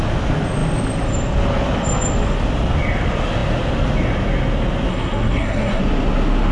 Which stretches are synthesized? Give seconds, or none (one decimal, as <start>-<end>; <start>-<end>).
4.9-5.8